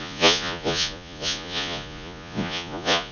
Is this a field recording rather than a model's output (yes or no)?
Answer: no